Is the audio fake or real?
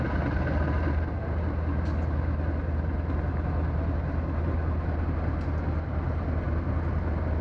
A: real